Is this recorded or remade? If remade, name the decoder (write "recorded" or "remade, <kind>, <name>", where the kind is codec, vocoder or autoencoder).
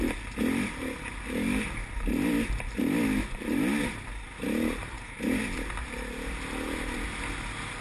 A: recorded